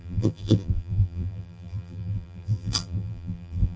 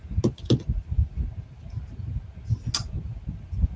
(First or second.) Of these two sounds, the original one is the second